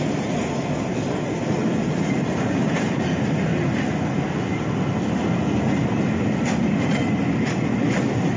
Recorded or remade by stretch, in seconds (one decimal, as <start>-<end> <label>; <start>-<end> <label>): 0.0-3.5 remade; 3.5-8.4 recorded